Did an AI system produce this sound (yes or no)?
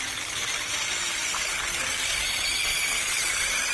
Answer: no